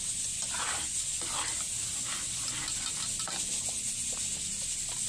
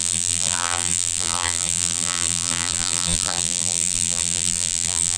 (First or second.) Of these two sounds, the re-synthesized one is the second